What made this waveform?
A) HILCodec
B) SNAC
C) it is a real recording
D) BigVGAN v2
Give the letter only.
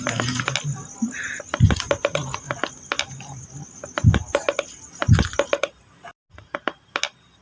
C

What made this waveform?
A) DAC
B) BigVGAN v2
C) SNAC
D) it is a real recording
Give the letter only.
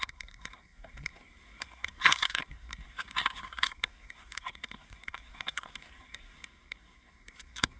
C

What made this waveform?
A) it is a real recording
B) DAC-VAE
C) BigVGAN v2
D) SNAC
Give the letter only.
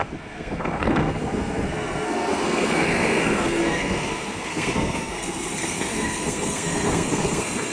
D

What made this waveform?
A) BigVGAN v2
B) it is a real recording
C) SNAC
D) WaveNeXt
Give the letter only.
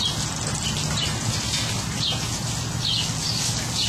B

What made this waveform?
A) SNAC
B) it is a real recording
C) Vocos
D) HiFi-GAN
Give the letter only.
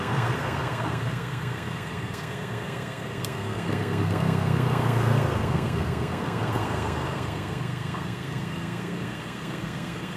A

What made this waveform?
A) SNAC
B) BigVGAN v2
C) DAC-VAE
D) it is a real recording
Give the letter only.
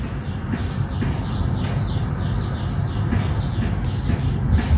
D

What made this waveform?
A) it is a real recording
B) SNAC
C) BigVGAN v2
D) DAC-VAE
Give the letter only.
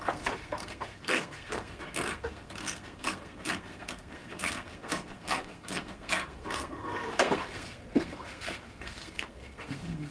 B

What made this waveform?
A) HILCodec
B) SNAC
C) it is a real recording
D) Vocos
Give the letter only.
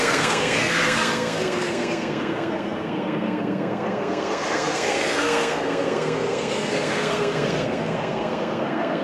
B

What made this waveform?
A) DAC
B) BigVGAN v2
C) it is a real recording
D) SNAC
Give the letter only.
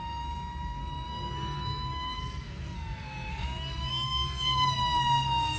D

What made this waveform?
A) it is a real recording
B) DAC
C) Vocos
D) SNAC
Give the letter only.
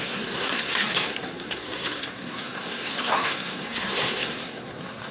D